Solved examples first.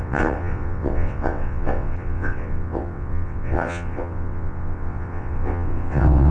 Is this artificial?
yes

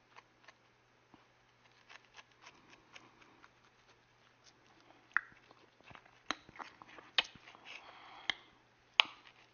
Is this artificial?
no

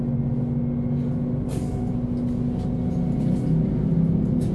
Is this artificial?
no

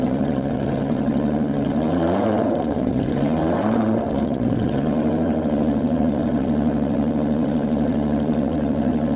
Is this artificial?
yes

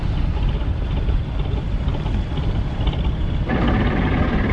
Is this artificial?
no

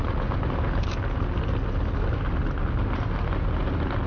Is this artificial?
no